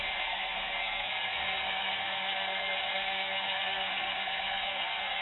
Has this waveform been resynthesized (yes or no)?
yes